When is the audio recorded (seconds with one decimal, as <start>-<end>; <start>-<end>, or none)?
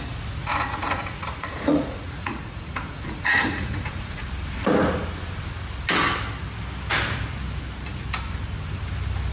0.0-0.4; 4.2-9.3